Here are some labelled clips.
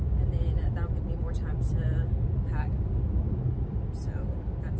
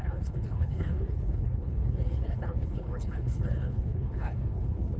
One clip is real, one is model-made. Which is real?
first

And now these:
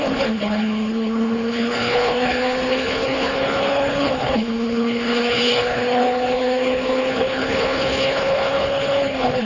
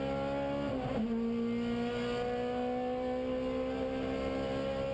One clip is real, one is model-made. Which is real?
second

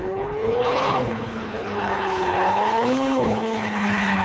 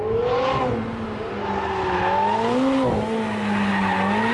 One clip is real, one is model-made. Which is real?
second